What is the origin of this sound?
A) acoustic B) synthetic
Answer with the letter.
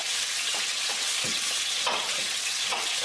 B